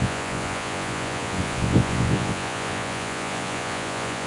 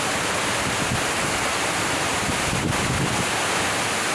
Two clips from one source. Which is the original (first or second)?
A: second